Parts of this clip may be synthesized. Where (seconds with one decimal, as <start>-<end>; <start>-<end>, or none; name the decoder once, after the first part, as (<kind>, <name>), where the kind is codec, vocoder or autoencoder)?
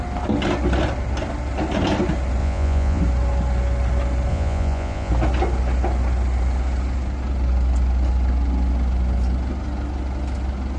2.4-3.0 (vocoder, Vocos); 4.3-5.1